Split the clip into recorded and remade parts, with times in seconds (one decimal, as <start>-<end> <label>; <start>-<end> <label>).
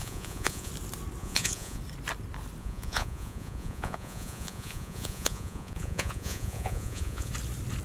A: 0.0-0.7 remade; 0.7-1.2 recorded; 1.2-1.8 remade; 1.8-2.6 recorded; 2.6-7.3 remade; 7.3-7.8 recorded